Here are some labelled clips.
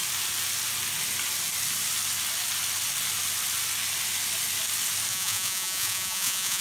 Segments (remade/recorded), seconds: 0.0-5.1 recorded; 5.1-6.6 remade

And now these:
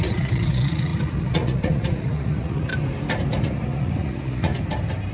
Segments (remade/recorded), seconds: 0.0-2.7 remade; 2.7-3.4 recorded; 3.4-4.5 remade; 4.5-5.1 recorded

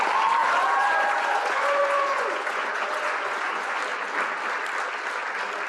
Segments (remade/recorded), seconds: 0.0-0.4 recorded; 0.4-3.8 remade; 3.8-5.7 recorded